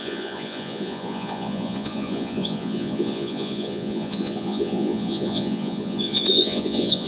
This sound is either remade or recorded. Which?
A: remade